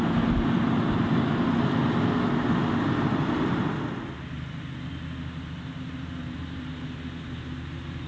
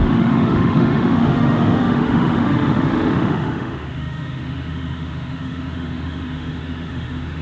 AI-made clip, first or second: second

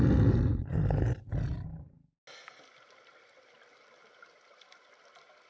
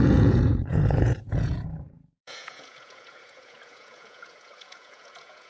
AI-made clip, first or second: second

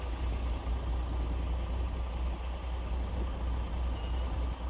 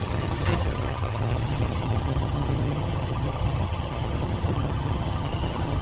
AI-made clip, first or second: second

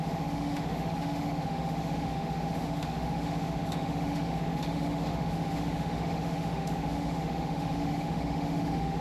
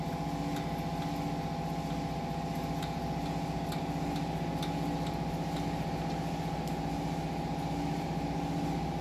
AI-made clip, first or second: first